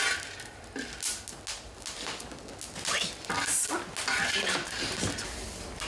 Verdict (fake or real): real